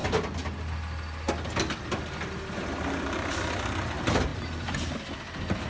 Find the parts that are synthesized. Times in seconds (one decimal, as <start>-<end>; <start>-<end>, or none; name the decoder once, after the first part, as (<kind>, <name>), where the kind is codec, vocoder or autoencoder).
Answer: 4.3-4.9 (vocoder, BigVGAN v2)